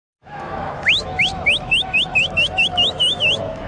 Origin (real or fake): fake